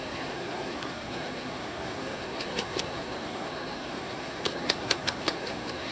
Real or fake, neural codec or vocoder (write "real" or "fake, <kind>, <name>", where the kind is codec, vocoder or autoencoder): fake, codec, SNAC